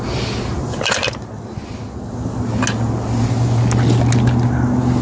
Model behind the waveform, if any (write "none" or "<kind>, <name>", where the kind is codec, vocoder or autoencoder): none